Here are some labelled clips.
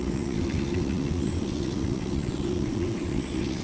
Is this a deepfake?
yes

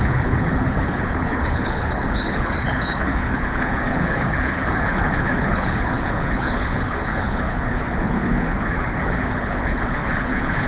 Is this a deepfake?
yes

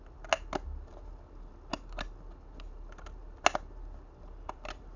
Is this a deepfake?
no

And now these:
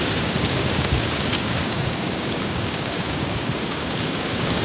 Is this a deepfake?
yes